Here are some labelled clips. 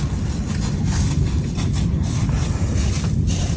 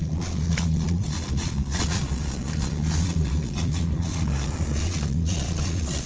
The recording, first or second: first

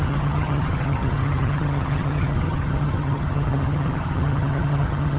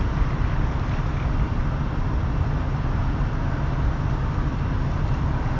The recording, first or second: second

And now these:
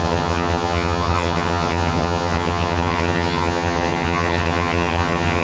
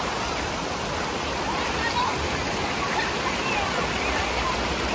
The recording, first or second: second